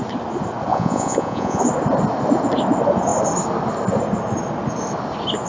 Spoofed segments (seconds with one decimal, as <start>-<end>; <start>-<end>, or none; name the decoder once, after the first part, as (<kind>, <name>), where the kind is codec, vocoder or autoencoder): 0.7-1.6 (vocoder, Vocos)